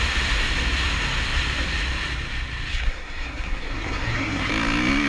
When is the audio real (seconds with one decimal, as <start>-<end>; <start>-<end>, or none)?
0.0-2.7; 4.5-5.1